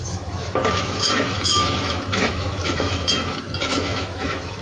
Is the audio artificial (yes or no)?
yes